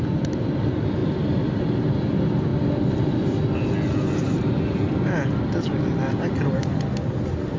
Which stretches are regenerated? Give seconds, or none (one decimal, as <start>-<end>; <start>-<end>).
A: none